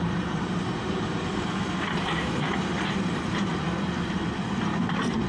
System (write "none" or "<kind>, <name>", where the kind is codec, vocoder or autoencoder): vocoder, BigVGAN v2